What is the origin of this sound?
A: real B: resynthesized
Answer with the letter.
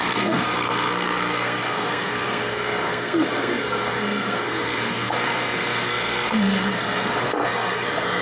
B